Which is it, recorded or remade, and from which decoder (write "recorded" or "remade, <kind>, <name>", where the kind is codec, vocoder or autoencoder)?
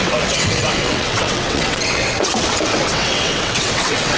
remade, vocoder, WaveNeXt